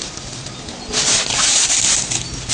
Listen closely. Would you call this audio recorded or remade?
recorded